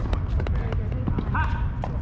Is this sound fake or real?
real